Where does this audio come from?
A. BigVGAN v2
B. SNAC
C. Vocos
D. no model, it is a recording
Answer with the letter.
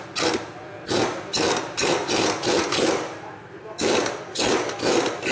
D